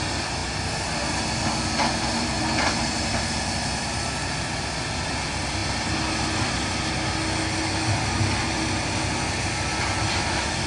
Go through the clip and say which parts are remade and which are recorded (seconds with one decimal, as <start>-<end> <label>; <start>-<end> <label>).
0.0-10.7 recorded